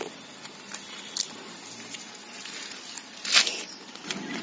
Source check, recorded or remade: recorded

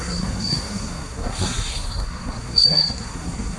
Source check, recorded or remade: remade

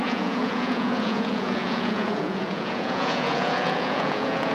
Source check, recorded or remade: remade